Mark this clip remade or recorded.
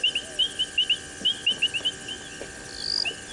recorded